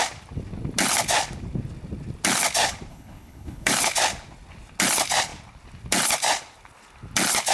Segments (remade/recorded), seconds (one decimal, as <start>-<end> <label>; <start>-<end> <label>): 0.0-2.9 recorded; 2.9-3.7 remade; 3.7-7.5 recorded